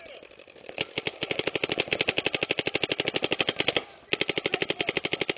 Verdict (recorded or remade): recorded